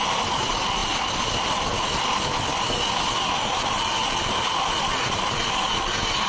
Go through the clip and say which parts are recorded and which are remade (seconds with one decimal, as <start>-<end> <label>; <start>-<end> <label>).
0.0-6.3 recorded